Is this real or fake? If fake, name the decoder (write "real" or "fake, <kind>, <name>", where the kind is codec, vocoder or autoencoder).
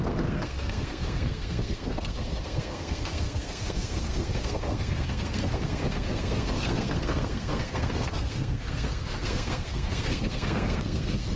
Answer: fake, codec, SNAC